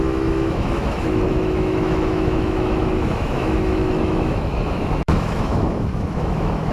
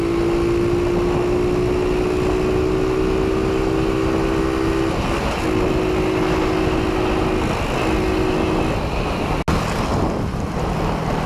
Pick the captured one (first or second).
second